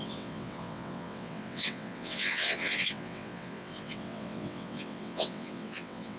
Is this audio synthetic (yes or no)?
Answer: yes